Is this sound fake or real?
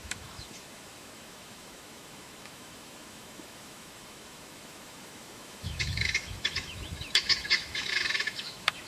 fake